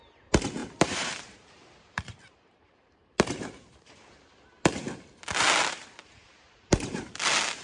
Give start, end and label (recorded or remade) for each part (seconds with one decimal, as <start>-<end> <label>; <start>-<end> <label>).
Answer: 0.0-0.6 recorded; 0.6-4.2 remade; 4.2-6.2 recorded; 6.2-7.1 remade; 7.1-7.6 recorded